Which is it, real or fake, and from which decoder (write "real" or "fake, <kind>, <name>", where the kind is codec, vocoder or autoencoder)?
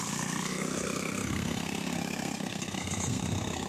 fake, codec, SNAC